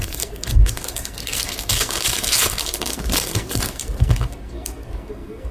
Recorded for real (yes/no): no